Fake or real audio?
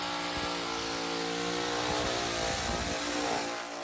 real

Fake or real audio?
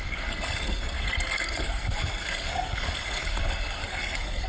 fake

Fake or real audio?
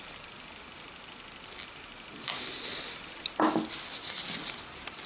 real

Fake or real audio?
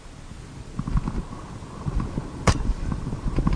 real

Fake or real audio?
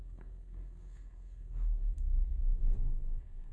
fake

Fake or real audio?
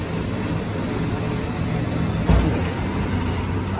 real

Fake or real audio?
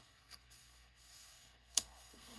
fake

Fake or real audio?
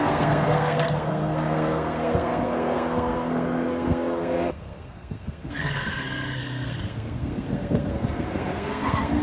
fake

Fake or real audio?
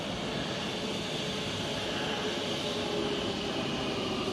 real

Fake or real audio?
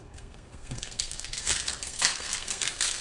fake